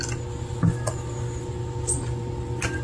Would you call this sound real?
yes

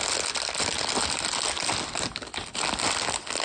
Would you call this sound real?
yes